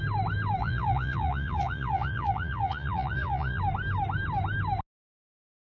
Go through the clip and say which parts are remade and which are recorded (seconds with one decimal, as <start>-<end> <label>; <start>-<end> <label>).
0.0-0.6 recorded; 0.6-3.6 remade; 3.6-5.8 recorded